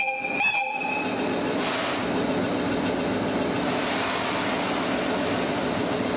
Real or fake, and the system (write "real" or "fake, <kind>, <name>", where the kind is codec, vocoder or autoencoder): real